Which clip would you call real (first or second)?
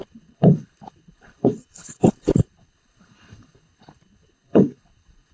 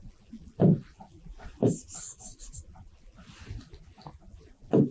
second